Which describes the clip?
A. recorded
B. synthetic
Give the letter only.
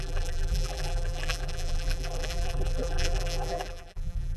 B